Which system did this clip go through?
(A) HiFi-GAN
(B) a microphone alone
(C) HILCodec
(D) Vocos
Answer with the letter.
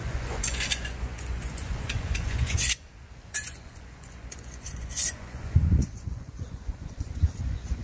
D